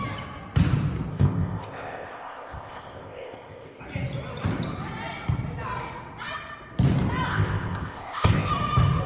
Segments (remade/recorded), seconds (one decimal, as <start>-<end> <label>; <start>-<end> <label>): 0.0-1.1 recorded; 1.1-3.8 remade; 3.8-7.3 recorded; 7.3-8.5 remade; 8.5-9.1 recorded